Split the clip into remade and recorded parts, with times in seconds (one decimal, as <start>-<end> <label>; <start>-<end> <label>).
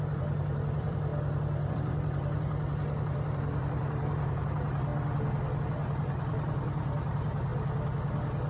0.0-1.1 remade; 1.1-1.7 recorded; 1.7-4.9 remade; 4.9-5.6 recorded; 5.6-7.5 remade; 7.5-8.5 recorded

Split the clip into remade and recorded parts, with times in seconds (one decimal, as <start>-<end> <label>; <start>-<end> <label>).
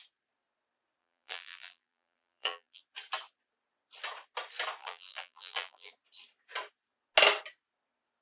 0.0-1.0 recorded; 1.0-2.8 remade; 2.8-4.8 recorded; 4.8-5.9 remade; 5.9-8.2 recorded